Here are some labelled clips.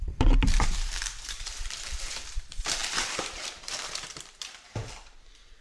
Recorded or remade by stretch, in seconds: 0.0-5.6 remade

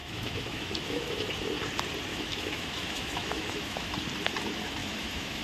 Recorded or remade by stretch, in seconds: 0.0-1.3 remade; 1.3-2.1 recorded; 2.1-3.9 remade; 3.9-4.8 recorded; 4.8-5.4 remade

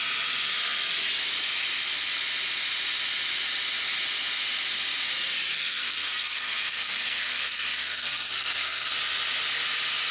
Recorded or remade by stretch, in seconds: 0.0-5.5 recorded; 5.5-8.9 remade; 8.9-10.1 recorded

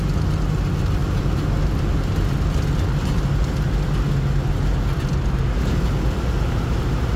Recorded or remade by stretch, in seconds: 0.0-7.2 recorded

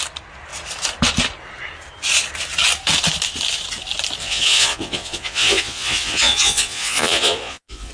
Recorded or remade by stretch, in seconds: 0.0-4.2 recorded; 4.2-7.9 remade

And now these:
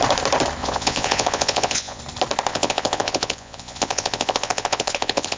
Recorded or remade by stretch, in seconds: 0.0-0.6 recorded; 0.6-2.0 remade; 2.0-2.5 recorded; 2.5-5.4 remade

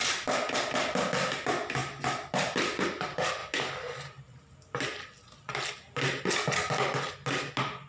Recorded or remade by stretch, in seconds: 0.0-7.9 recorded

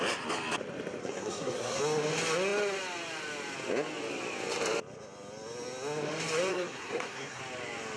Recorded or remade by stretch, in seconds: 0.0-1.0 recorded; 1.0-1.8 remade; 1.8-6.5 recorded; 6.5-7.4 remade; 7.4-8.0 recorded